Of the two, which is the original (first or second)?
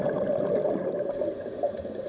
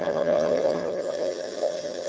first